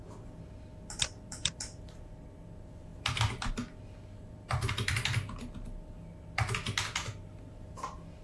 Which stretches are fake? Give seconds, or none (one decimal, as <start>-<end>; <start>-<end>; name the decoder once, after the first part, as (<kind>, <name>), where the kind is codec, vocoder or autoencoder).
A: none